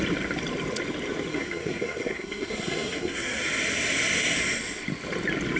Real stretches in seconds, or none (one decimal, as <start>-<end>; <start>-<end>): 0.0-1.3; 3.4-5.6